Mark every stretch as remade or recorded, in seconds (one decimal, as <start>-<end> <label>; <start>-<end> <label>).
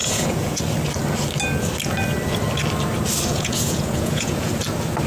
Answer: 0.0-0.6 remade; 0.6-3.3 recorded; 3.3-4.5 remade; 4.5-5.1 recorded